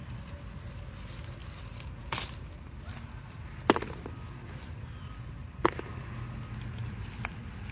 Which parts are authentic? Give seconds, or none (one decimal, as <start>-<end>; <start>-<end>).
0.0-7.7